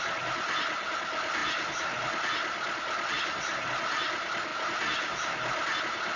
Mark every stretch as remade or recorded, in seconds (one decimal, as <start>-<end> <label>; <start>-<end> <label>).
0.0-6.2 recorded